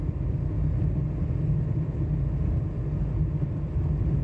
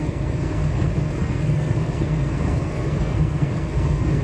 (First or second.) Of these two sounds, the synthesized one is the second